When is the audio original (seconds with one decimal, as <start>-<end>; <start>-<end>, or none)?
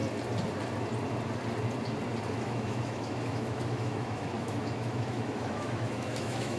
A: 0.0-2.3